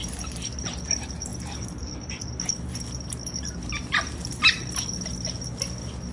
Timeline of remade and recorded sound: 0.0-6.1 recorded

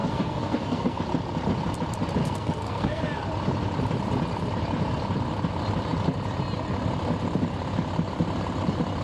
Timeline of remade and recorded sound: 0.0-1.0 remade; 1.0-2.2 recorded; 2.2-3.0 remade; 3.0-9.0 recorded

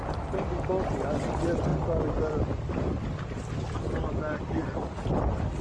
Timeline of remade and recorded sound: 0.0-5.6 recorded

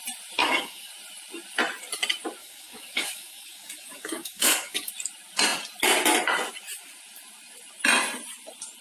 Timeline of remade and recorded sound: 0.0-0.4 recorded; 0.4-0.9 remade; 0.9-2.4 recorded; 2.4-4.9 remade; 4.9-8.8 recorded

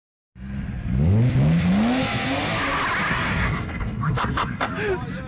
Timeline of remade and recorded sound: 0.0-3.1 recorded; 3.1-4.7 remade; 4.7-5.3 recorded